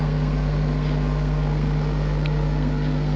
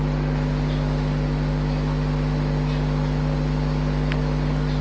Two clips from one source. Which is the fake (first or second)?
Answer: first